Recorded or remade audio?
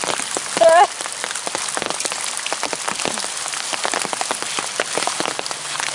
recorded